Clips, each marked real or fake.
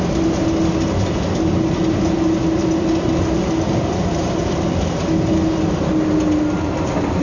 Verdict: real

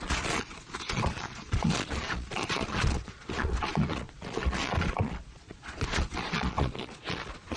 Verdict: fake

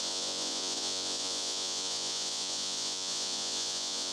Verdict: fake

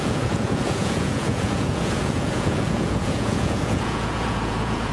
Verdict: fake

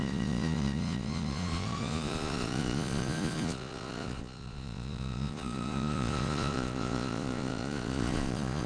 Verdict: fake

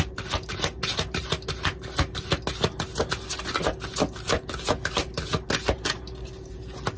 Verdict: real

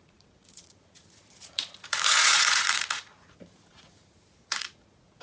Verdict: fake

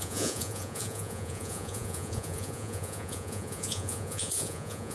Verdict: fake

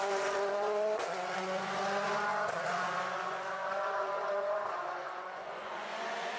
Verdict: fake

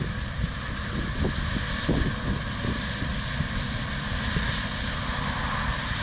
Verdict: real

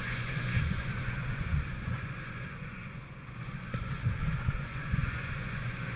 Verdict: fake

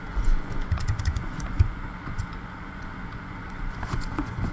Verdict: fake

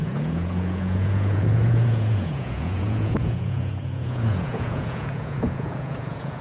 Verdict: fake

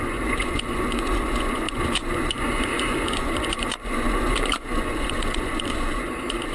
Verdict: fake